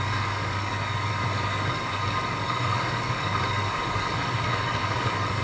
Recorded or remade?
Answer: remade